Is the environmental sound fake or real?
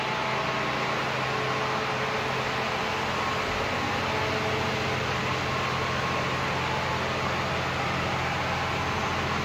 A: real